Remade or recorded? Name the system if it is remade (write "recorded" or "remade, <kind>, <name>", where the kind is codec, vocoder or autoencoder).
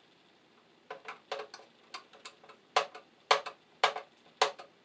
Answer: recorded